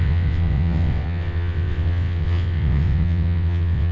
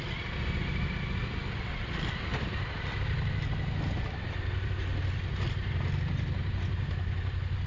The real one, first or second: second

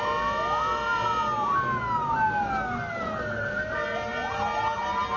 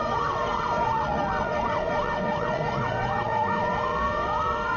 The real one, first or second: first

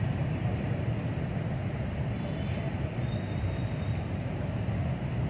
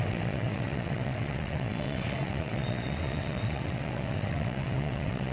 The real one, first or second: first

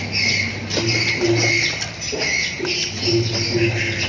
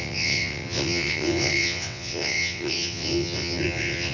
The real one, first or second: first